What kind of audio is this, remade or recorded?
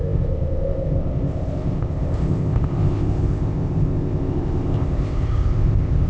remade